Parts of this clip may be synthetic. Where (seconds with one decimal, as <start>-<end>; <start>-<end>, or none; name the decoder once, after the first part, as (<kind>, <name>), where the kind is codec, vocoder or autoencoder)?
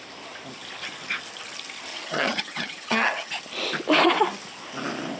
1.9-3.3 (vocoder, HiFi-GAN)